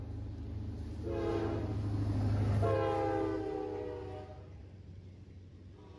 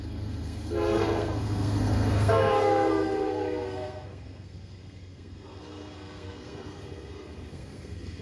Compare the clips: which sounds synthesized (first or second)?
second